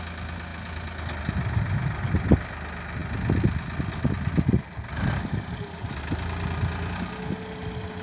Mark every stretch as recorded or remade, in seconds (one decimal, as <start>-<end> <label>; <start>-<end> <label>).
0.0-8.0 recorded